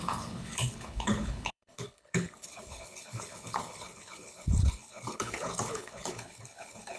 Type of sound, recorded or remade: remade